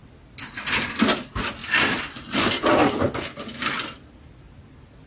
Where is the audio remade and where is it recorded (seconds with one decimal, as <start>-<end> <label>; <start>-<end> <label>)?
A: 0.0-5.1 recorded